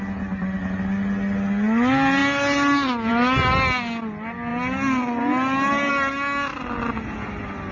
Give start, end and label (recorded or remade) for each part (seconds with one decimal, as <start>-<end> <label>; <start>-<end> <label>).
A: 0.0-7.7 recorded